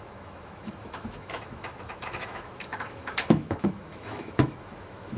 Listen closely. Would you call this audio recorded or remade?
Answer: remade